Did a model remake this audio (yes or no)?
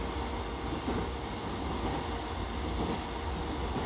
no